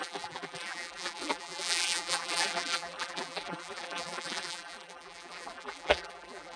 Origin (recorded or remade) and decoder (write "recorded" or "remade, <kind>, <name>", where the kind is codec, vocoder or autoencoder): remade, vocoder, BigVGAN v2